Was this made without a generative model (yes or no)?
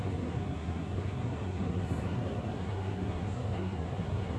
no